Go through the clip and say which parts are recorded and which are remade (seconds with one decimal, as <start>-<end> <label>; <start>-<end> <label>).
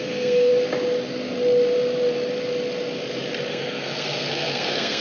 0.0-0.5 remade; 0.5-3.5 recorded; 3.5-5.0 remade